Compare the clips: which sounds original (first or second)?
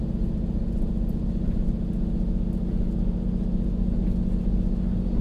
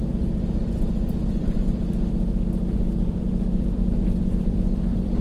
first